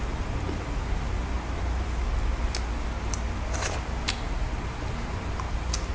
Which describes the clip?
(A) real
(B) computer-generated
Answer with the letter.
A